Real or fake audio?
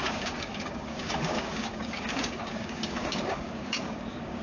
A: fake